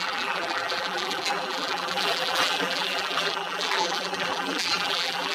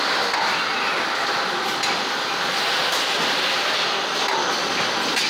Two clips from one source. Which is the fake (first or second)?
first